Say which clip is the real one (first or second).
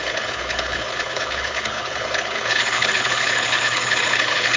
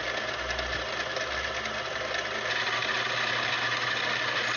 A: second